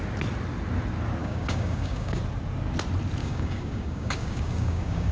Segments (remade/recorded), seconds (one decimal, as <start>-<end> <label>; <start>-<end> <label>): 0.0-1.2 recorded; 1.2-2.2 remade; 2.2-3.2 recorded; 3.2-5.1 remade